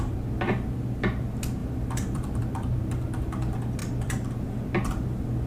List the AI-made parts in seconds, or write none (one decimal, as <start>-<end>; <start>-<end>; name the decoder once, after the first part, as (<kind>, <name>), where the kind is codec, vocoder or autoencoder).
1.6-2.4 (vocoder, BigVGAN v2)